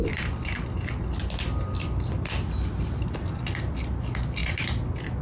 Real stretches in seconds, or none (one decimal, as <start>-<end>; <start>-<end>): 0.0-5.2